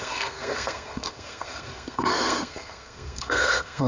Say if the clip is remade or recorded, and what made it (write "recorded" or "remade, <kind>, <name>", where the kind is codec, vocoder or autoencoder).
remade, codec, SNAC